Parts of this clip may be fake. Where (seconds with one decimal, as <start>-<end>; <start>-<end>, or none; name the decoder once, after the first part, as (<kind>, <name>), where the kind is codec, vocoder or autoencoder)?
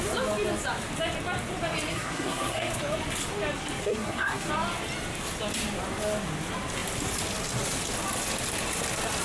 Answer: 1.9-2.7 (codec, SNAC); 3.8-4.5